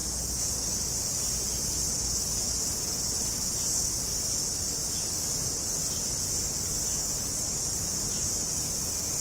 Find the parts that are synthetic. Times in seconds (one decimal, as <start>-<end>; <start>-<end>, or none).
none